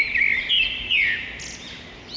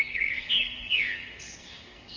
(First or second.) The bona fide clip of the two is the first